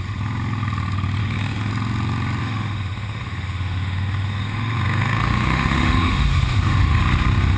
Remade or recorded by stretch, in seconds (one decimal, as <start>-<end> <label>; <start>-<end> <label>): 0.0-1.2 recorded; 1.2-1.7 remade; 1.7-2.4 recorded; 2.4-7.0 remade; 7.0-7.6 recorded